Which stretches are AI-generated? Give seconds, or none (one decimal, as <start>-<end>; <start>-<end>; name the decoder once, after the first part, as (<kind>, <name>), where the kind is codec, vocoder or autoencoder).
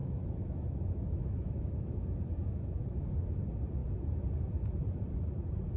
0.0-3.1 (autoencoder, DAC-VAE)